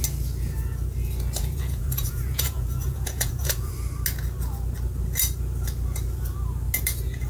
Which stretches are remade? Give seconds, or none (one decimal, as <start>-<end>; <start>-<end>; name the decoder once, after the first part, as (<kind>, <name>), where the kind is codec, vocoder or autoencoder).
1.4-3.7 (vocoder, Vocos)